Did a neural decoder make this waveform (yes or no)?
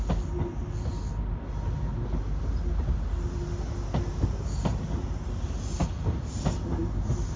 no